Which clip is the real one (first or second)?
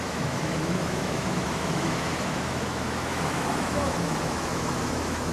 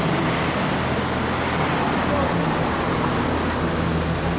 second